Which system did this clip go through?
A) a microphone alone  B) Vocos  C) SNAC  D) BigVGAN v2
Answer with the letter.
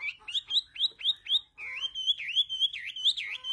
A